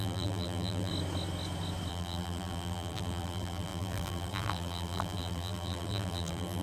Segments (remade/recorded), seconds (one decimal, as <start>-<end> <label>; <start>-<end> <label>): 0.0-0.9 remade; 0.9-1.9 recorded; 1.9-6.6 remade